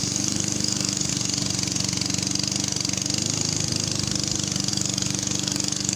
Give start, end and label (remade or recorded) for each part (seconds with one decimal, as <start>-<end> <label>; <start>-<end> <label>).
0.0-1.1 remade; 1.1-4.7 recorded; 4.7-6.0 remade